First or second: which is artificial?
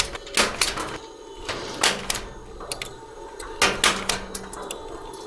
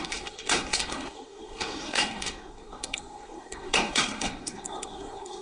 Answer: second